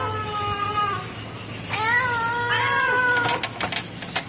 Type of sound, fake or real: real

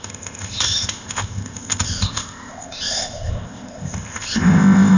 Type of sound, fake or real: fake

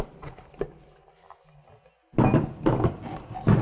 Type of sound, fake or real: real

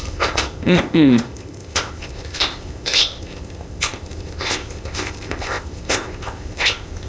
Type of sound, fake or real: fake